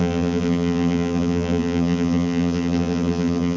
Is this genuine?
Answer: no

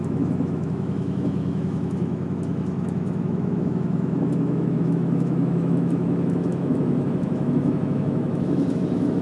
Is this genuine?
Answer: no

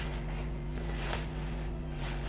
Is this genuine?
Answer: no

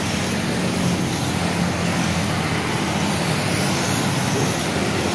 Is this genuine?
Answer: yes